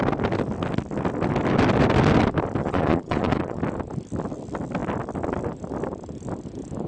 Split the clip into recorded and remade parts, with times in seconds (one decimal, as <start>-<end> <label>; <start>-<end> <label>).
0.0-2.6 recorded; 2.6-3.6 remade; 3.6-6.9 recorded